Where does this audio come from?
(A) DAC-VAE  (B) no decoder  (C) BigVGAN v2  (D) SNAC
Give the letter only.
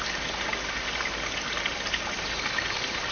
B